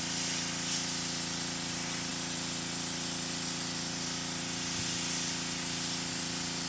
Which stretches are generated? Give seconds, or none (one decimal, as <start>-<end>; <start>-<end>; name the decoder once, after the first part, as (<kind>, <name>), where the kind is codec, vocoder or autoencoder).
none